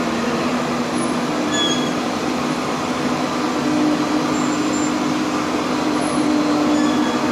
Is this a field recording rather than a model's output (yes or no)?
yes